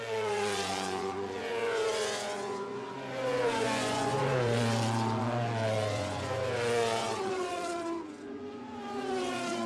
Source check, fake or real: fake